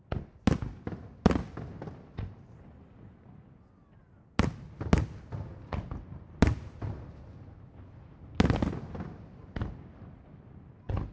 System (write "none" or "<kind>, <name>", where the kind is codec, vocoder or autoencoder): none